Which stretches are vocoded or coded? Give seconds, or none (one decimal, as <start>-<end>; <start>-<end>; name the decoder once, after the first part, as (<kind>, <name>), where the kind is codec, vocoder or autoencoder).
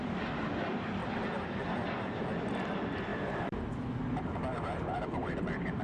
3.1-3.7 (vocoder, BigVGAN v2); 4.5-5.8